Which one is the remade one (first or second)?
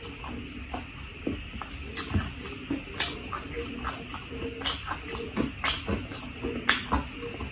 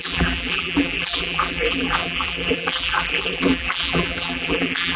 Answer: second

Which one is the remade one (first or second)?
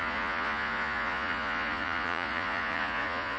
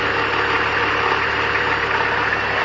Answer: first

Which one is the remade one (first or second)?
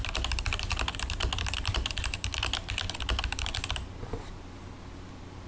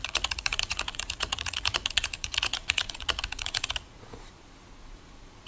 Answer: second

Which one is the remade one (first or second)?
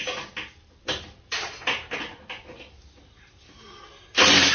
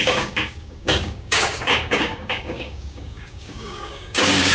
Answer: second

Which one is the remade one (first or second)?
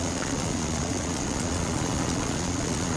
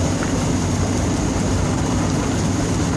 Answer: first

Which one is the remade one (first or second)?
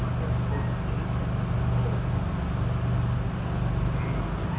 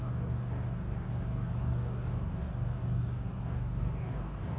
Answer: second